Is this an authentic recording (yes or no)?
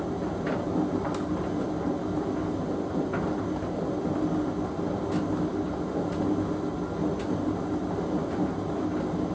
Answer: yes